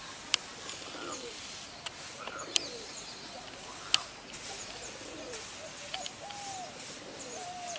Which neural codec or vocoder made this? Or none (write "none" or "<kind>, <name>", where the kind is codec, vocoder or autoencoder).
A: none